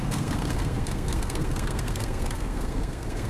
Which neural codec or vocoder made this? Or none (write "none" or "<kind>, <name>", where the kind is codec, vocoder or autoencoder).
codec, SNAC